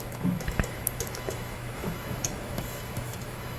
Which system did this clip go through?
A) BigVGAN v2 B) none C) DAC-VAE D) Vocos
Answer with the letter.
C